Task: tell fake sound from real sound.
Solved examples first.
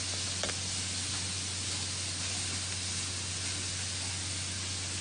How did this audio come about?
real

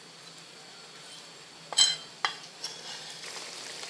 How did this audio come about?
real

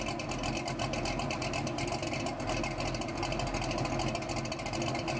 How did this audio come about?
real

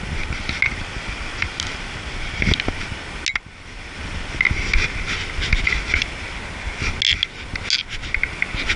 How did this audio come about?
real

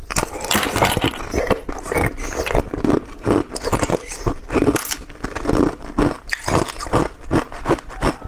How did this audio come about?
real